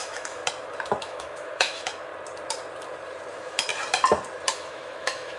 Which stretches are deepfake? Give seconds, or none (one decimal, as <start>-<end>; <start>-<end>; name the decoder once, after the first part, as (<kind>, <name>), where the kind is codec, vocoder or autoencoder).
0.0-0.4 (autoencoder, DAC-VAE); 1.0-2.1; 3.3-3.7; 4.5-5.4